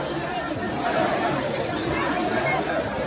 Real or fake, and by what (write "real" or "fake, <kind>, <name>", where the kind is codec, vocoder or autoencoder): fake, vocoder, BigVGAN v2